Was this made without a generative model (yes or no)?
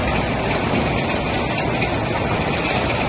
yes